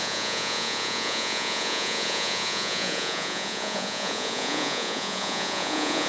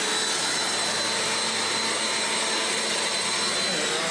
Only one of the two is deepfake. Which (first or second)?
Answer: first